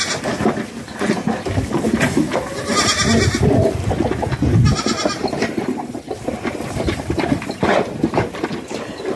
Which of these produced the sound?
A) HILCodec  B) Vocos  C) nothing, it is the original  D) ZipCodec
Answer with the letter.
C